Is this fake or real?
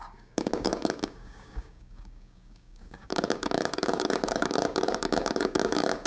fake